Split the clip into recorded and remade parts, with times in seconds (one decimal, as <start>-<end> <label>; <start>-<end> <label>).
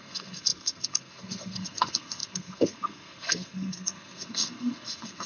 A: 0.0-5.3 remade